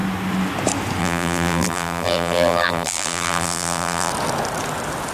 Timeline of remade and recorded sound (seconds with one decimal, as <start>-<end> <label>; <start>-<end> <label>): 0.0-1.0 recorded; 1.0-4.1 remade; 4.1-5.1 recorded